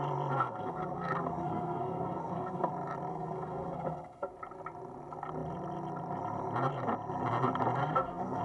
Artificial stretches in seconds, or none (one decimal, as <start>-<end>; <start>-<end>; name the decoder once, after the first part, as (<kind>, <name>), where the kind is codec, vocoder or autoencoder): 0.5-2.7 (codec, SNAC); 3.1-4.3; 7.8-8.4